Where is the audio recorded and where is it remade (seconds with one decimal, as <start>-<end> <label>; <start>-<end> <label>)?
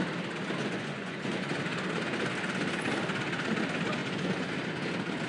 0.0-0.6 recorded; 0.6-1.6 remade; 1.6-4.0 recorded; 4.0-4.5 remade; 4.5-5.3 recorded